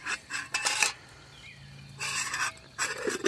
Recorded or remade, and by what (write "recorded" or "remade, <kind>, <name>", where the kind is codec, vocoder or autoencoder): recorded